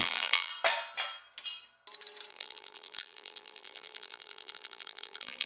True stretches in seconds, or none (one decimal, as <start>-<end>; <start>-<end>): 0.5-2.3